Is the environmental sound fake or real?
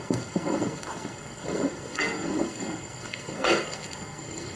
fake